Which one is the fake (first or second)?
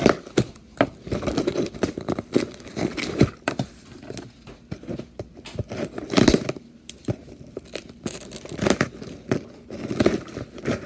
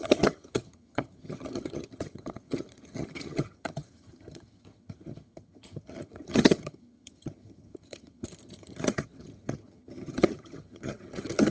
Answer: second